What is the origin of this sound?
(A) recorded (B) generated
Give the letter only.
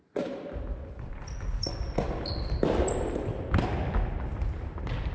A